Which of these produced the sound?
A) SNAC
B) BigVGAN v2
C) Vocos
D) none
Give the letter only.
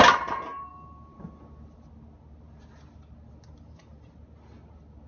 D